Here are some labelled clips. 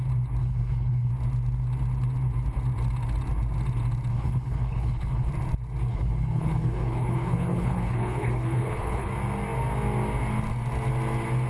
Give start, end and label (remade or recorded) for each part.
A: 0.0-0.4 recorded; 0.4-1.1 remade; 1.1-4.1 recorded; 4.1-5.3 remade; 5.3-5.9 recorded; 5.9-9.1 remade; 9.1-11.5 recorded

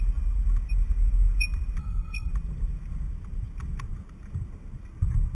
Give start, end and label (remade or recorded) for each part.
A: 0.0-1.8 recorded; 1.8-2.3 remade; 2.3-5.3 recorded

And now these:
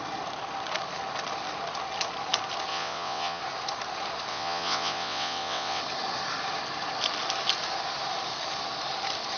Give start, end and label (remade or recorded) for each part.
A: 0.0-2.7 recorded; 2.7-3.4 remade; 3.4-4.3 recorded; 4.3-5.8 remade; 5.8-9.4 recorded

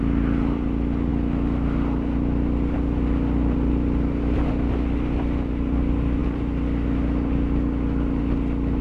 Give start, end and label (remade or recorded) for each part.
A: 0.0-8.8 recorded

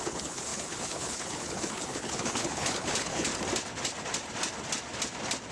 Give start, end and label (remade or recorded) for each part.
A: 0.0-3.3 remade; 3.3-5.5 recorded

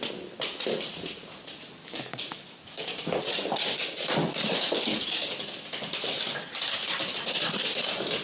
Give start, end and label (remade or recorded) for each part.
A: 0.0-1.8 recorded; 1.8-3.0 remade; 3.0-4.9 recorded; 4.9-5.6 remade; 5.6-8.2 recorded